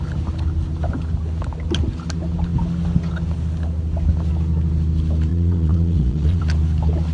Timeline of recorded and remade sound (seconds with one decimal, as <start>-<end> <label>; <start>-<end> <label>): 0.0-5.3 recorded; 5.3-6.4 remade; 6.4-7.1 recorded